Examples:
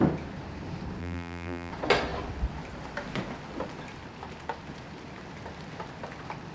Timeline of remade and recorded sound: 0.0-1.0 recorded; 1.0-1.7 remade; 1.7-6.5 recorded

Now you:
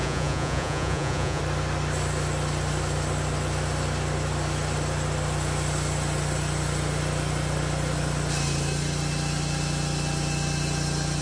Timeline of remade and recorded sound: 0.0-1.4 remade; 1.4-11.2 recorded